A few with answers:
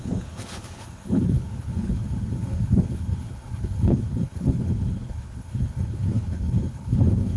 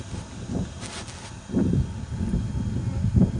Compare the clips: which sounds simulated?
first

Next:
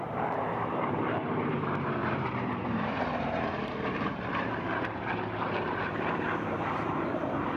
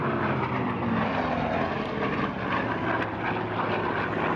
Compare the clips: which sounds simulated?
first